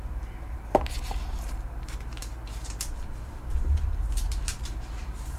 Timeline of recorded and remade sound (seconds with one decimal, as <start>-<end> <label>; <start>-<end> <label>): 0.0-5.4 remade